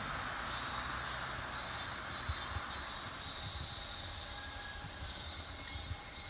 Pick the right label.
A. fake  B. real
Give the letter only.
B